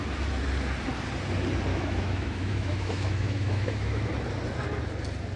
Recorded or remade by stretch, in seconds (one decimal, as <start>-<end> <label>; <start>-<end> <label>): 0.0-1.7 recorded; 1.7-4.1 remade; 4.1-5.4 recorded